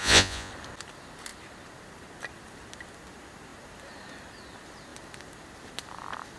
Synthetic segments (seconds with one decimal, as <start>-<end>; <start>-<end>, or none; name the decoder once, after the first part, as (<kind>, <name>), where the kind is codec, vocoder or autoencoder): 0.0-0.5 (vocoder, Vocos)